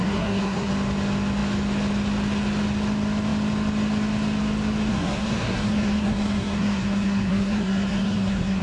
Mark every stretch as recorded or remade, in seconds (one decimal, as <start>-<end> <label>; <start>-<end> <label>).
0.0-0.7 remade; 0.7-4.9 recorded; 4.9-8.6 remade